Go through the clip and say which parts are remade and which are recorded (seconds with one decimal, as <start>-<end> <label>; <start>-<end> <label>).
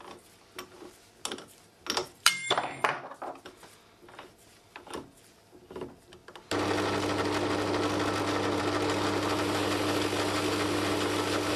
0.0-2.0 recorded; 2.0-3.1 remade; 3.1-11.6 recorded